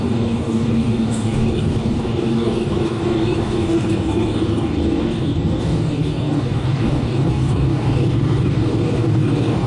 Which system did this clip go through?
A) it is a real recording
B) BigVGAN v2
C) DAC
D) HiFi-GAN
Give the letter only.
C